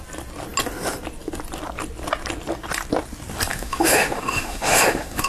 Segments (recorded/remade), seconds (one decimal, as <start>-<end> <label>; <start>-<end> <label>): 0.0-3.5 recorded; 3.5-5.3 remade